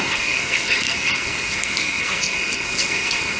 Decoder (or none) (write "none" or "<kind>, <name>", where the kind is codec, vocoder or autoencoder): codec, SNAC